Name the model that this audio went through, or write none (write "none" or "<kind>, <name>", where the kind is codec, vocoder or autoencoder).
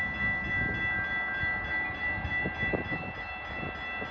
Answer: none